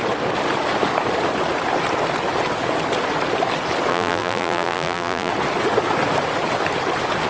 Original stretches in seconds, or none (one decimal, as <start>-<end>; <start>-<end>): 0.0-3.9; 5.3-7.3